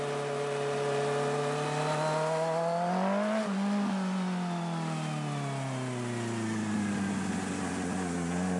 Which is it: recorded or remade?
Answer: recorded